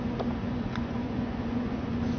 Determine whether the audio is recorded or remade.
remade